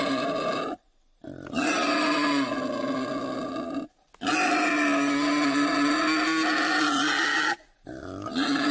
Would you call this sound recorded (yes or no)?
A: yes